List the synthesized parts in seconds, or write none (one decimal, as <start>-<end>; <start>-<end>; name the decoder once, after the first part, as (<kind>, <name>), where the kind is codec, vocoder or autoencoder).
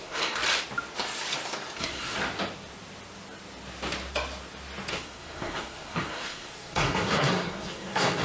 0.0-0.4 (codec, SNAC); 1.8-2.2; 4.9-8.2